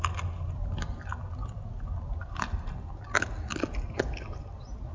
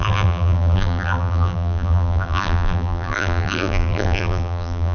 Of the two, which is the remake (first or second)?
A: second